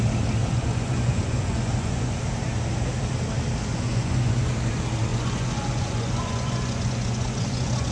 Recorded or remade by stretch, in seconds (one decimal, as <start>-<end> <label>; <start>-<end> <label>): 0.0-0.4 recorded; 0.4-2.2 remade; 2.2-3.7 recorded; 3.7-4.5 remade; 4.5-5.1 recorded; 5.1-7.9 remade